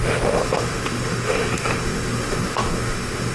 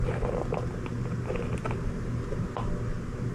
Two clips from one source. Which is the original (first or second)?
second